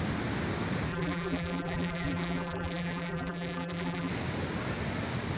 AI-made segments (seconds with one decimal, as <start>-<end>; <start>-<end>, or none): 0.9-4.1